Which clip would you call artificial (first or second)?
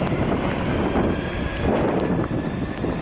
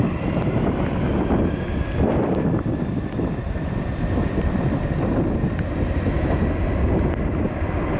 second